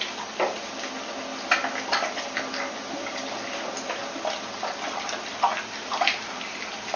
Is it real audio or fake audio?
real